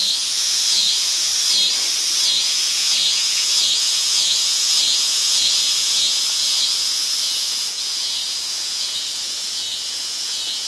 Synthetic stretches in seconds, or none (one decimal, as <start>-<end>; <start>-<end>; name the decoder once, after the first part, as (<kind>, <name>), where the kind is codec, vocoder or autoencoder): 0.0-1.3 (vocoder, Vocos); 2.3-10.7